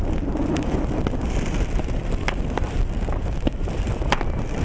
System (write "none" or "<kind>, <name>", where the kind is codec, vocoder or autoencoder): vocoder, BigVGAN v2